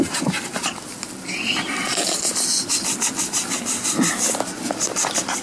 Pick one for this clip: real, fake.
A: real